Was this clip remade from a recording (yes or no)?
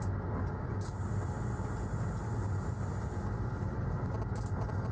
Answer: no